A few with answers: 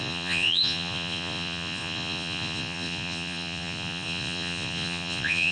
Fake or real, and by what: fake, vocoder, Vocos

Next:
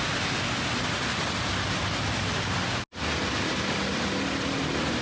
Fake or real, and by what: real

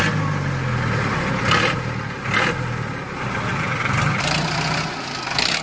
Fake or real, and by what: real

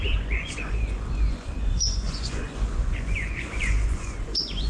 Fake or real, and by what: fake, vocoder, Vocos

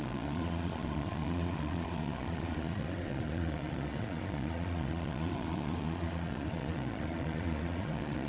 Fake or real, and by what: fake, vocoder, Vocos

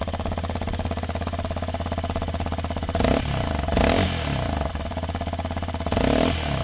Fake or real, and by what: real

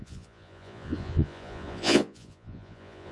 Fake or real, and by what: fake, vocoder, Vocos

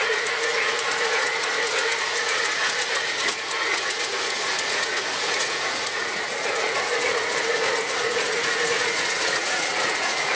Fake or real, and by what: fake, vocoder, Vocos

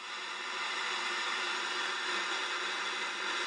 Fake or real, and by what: real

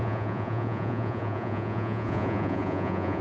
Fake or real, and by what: fake, vocoder, Vocos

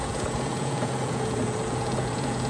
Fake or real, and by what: fake, vocoder, Vocos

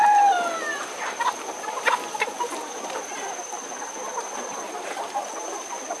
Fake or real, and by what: real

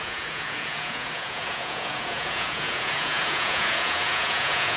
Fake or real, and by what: fake, vocoder, Vocos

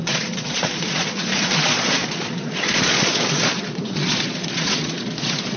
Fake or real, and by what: fake, vocoder, Vocos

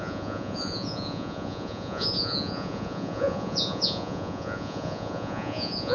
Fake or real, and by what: fake, vocoder, Vocos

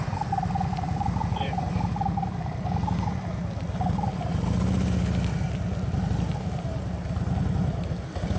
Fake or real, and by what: real